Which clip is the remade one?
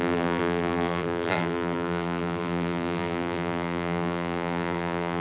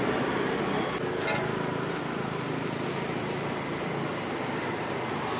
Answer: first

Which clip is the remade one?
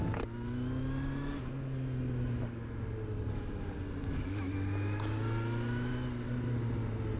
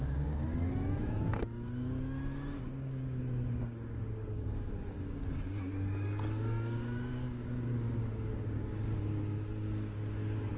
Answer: second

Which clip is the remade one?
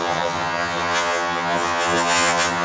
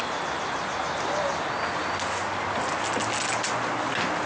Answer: first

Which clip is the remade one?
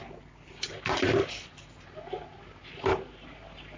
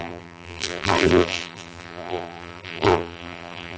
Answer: second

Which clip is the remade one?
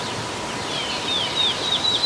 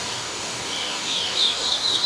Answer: second